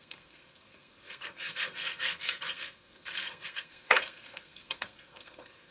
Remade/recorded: remade